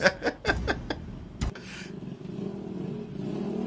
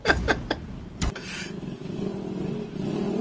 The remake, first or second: second